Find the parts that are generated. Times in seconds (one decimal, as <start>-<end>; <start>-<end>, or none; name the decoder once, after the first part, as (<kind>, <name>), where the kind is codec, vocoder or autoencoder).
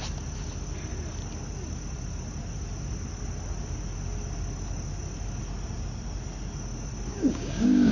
7.1-7.9 (codec, DAC)